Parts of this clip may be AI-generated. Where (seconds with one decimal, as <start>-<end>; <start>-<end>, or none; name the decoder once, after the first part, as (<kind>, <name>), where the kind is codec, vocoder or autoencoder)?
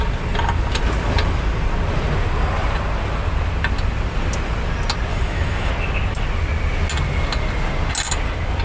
5.1-5.7 (autoencoder, DAC-VAE)